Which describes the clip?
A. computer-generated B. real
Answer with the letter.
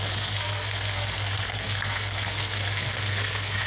A